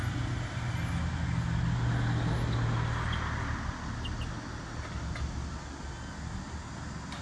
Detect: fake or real real